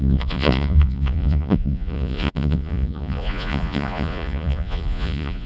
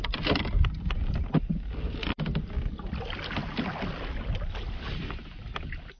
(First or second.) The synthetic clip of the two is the first